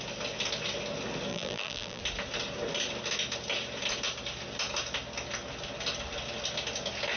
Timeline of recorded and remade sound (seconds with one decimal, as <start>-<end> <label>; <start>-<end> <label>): 0.0-1.3 recorded; 1.3-2.0 remade; 2.0-7.2 recorded